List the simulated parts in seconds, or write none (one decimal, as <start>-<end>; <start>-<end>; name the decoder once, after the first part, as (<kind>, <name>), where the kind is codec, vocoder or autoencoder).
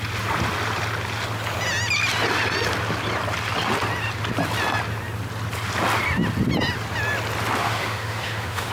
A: 7.6-8.7 (autoencoder, DAC-VAE)